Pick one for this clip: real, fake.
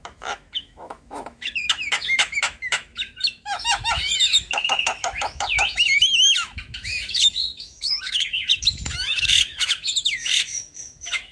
fake